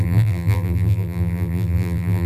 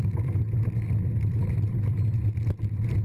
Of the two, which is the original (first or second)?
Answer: second